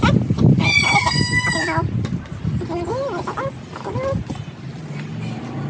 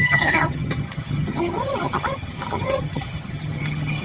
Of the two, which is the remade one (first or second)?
second